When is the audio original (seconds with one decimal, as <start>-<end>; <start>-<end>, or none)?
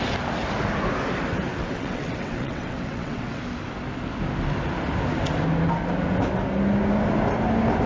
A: 0.0-1.5; 3.4-7.9